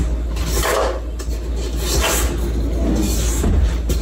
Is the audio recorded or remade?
recorded